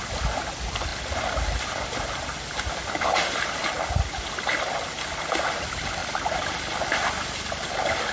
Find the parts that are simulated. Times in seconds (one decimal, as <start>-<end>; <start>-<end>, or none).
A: none